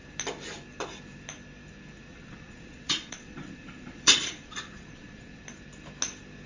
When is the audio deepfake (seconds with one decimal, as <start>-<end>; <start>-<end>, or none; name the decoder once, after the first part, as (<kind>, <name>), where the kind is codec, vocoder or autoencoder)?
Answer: 2.1-5.4 (vocoder, Vocos)